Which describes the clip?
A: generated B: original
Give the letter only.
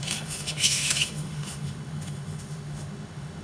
A